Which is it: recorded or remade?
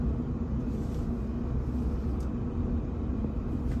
recorded